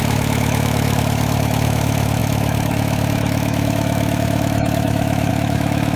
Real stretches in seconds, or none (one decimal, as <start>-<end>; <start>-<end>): none